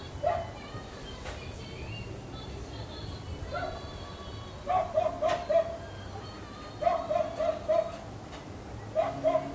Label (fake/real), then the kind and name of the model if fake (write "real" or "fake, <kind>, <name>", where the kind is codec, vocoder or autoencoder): real